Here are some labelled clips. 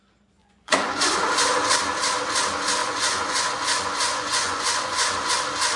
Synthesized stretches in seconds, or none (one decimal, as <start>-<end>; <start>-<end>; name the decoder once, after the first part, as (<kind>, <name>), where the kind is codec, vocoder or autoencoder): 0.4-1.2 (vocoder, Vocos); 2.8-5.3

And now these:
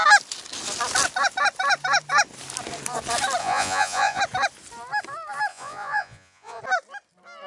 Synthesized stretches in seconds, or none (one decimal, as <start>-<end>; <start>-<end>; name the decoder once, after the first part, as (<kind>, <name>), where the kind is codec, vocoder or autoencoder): 3.4-4.2 (vocoder, Vocos); 5.5-6.6

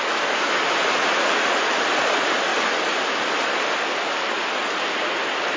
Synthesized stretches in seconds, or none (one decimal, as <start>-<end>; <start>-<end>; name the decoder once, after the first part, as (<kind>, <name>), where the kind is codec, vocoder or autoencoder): 0.8-1.7 (vocoder, Vocos)

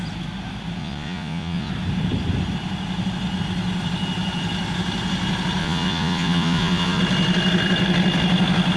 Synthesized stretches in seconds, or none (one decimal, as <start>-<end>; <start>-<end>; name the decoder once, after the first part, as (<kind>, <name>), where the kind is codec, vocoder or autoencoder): 0.8-1.7 (vocoder, Vocos); 5.6-7.0

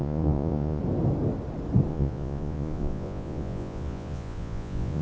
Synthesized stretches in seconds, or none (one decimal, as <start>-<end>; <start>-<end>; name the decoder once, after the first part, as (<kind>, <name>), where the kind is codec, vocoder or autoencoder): 0.0-0.8 (vocoder, Vocos); 1.9-5.0